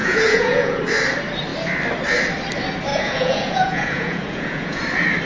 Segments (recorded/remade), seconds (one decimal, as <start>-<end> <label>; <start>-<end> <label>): 0.0-0.8 remade; 0.8-2.9 recorded; 2.9-4.8 remade; 4.8-5.3 recorded